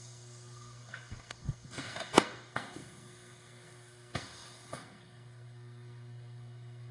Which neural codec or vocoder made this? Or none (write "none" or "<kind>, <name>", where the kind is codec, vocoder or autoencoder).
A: codec, SNAC